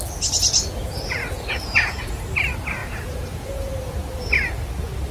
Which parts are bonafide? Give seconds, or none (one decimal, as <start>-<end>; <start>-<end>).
0.0-1.2; 2.2-2.8; 3.7-5.1

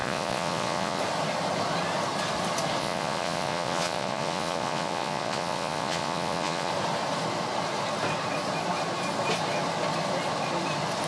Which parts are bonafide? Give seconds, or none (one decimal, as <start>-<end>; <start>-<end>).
1.0-2.8; 6.7-11.1

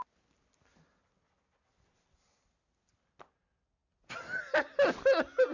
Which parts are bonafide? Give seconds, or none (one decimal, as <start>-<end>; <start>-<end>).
0.0-5.5

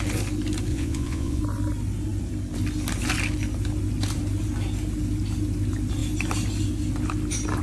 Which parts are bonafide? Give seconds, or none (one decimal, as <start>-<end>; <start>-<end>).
0.0-0.7; 1.4-7.6

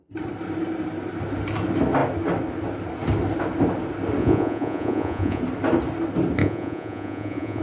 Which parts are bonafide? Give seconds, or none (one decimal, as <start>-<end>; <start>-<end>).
0.0-4.2; 5.4-6.4